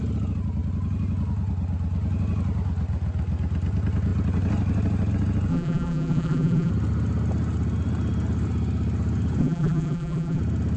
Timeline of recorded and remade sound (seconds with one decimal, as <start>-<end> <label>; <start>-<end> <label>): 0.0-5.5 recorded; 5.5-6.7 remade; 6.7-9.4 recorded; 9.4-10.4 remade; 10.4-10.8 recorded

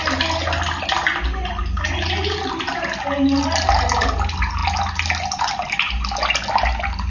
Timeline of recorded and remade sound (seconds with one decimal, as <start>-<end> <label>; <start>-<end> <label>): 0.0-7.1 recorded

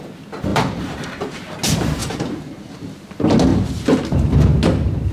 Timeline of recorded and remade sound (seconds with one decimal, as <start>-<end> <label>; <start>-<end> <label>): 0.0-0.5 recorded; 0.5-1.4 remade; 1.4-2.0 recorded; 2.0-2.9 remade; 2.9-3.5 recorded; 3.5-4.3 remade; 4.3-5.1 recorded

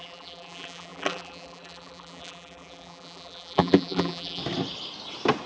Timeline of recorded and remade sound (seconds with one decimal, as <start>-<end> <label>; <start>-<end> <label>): 0.0-4.4 remade; 4.4-5.5 recorded

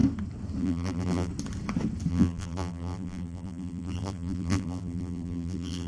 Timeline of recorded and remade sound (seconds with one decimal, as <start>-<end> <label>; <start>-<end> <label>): 0.0-0.6 recorded; 0.6-1.3 remade; 1.3-2.1 recorded; 2.1-5.9 remade